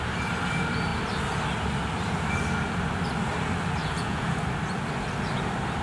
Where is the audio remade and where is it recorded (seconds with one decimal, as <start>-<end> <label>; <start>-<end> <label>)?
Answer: 0.0-3.8 recorded; 3.8-4.3 remade; 4.3-5.8 recorded